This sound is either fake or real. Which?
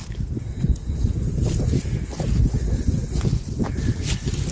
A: real